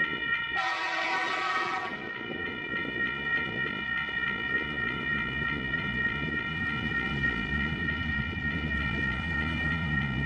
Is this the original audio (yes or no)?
no